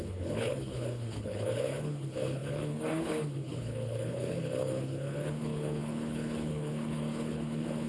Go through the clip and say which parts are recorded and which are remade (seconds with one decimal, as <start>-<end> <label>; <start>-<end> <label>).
0.0-7.9 remade